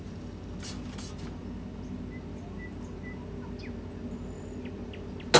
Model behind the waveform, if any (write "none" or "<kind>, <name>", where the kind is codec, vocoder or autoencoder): none